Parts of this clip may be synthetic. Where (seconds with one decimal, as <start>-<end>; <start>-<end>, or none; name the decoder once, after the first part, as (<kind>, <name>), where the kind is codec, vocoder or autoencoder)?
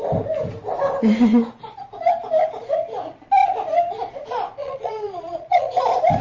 4.6-5.8 (vocoder, Vocos)